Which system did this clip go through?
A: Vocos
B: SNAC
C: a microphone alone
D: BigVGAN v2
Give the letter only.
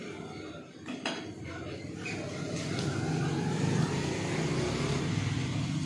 C